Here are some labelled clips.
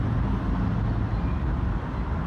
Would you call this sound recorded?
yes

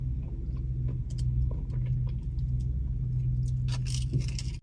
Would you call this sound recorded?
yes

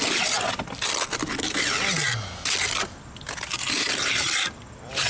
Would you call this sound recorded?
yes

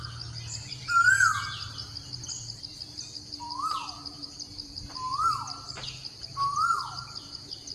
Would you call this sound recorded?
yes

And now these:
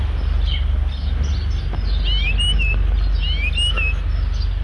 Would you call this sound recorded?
yes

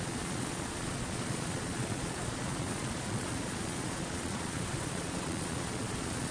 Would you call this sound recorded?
no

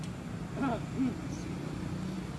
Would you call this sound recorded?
yes